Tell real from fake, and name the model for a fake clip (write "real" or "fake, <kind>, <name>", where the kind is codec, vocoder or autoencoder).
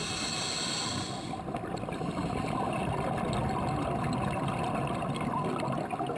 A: real